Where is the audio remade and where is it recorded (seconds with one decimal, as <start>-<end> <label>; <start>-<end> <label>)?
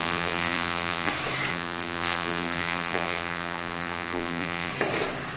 0.0-1.1 remade; 1.1-1.5 recorded; 1.5-4.7 remade; 4.7-5.4 recorded